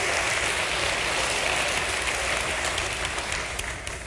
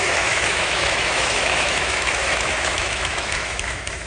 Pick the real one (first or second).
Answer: first